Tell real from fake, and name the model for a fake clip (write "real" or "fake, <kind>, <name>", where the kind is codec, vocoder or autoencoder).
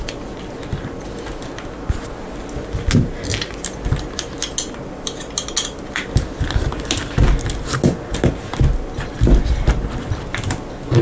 real